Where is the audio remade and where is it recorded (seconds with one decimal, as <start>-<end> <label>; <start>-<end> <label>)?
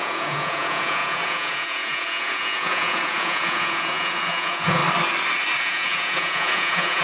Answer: 0.0-4.8 remade; 4.8-5.6 recorded; 5.6-7.0 remade